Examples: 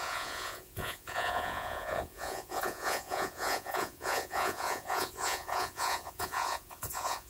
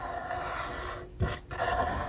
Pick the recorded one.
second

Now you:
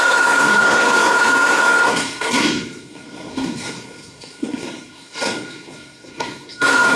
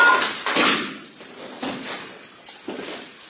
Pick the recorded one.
second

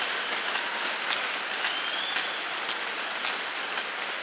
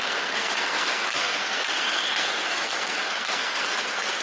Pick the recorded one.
first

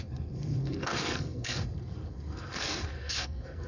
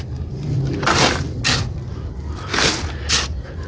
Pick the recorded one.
second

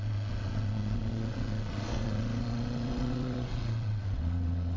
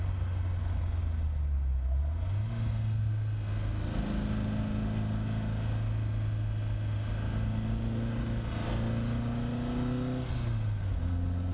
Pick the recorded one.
second